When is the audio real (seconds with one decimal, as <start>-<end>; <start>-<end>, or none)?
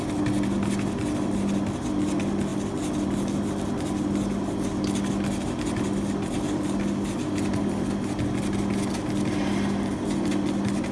0.0-10.9